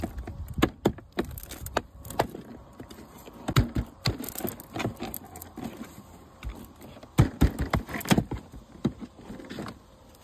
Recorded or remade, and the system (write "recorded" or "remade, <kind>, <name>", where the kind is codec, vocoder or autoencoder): recorded